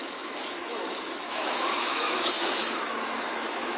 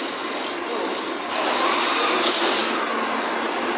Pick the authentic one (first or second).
second